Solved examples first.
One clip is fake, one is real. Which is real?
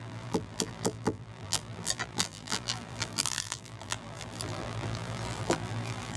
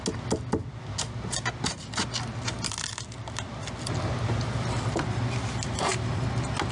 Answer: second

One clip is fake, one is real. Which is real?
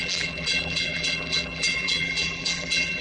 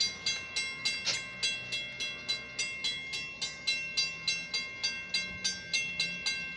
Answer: second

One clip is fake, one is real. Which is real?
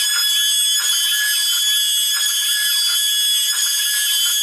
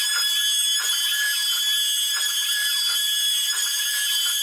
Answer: first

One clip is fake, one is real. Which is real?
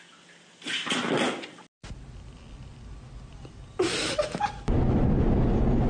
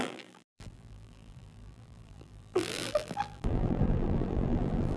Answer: first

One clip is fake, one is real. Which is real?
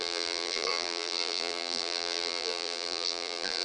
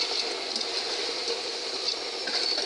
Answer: second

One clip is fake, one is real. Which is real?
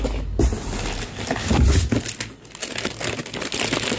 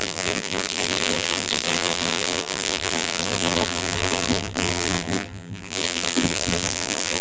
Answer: first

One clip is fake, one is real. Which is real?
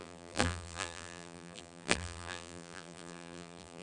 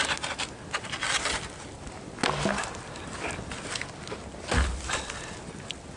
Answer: second